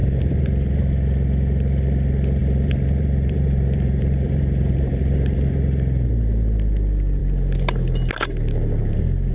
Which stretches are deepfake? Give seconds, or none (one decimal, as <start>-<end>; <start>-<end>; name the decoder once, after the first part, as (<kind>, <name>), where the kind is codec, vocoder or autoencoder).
0.0-0.8 (vocoder, BigVGAN v2); 2.4-6.1

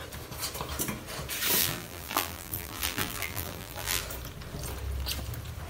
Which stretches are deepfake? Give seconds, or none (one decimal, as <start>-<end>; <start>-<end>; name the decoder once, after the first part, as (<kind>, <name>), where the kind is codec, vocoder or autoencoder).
1.6-4.0 (vocoder, BigVGAN v2)

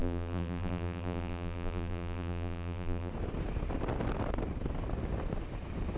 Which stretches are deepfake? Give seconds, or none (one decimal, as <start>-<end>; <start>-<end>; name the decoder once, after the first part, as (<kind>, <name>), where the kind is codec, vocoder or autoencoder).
0.0-3.1 (vocoder, BigVGAN v2)

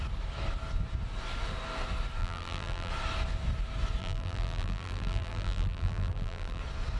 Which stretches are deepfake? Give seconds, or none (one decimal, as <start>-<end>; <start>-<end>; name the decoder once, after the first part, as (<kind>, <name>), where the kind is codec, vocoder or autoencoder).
2.2-2.9 (vocoder, BigVGAN v2); 4.0-6.6

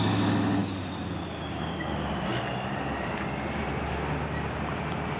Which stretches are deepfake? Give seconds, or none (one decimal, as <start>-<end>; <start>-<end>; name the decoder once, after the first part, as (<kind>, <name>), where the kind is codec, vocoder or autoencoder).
none

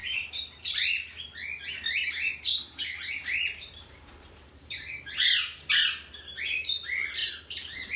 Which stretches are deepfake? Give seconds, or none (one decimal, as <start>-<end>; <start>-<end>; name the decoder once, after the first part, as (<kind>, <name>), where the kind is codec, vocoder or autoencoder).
0.0-8.0 (vocoder, BigVGAN v2)

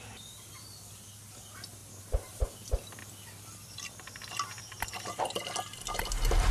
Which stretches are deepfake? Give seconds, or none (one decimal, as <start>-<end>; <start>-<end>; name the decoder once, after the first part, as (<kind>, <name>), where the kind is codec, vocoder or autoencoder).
1.8-2.4 (vocoder, BigVGAN v2)